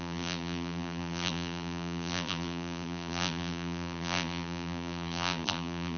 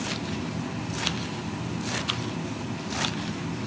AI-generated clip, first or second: first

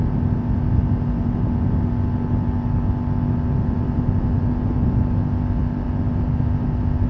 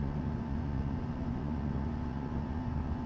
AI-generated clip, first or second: second